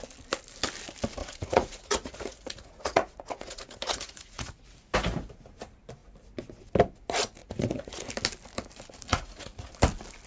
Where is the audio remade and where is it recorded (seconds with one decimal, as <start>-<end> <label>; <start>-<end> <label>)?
0.0-1.2 recorded; 1.2-4.5 remade; 4.5-7.4 recorded; 7.4-8.0 remade; 8.0-9.1 recorded; 9.1-9.7 remade; 9.7-10.3 recorded